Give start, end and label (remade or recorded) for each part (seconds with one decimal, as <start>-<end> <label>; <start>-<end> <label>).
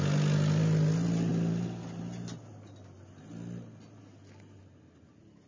0.0-5.5 recorded